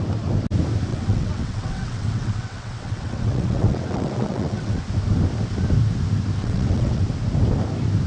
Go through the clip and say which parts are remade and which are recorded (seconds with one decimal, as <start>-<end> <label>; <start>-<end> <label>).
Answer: 0.0-0.9 recorded; 0.9-4.8 remade; 4.8-6.4 recorded; 6.4-7.0 remade; 7.0-8.1 recorded